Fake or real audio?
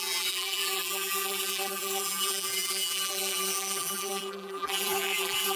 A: fake